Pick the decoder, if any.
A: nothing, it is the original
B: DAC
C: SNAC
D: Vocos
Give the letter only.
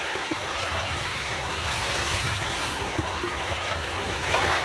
C